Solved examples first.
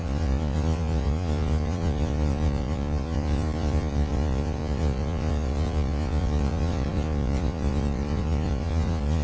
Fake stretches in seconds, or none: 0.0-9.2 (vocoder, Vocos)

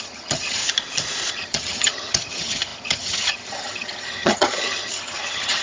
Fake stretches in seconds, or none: 0.0-0.6 (vocoder, HiFi-GAN); 1.3-5.6

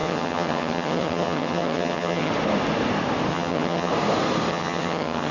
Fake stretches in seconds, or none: 0.0-2.3 (vocoder, HiFi-GAN); 3.3-3.9; 4.5-5.3

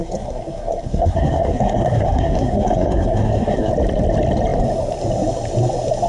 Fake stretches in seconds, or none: 0.0-3.7 (codec, SNAC)

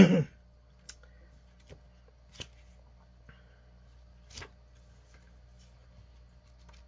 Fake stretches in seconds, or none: none